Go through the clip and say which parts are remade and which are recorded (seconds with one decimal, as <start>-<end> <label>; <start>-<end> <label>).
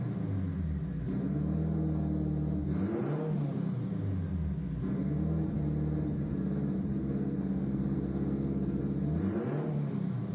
0.0-7.0 recorded; 7.0-8.8 remade; 8.8-10.3 recorded